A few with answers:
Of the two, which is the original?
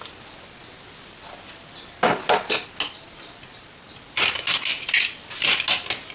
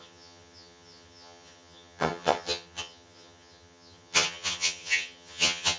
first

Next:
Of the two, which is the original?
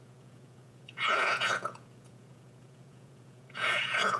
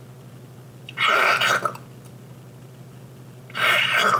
second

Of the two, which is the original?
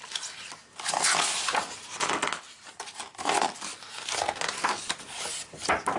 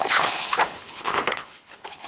first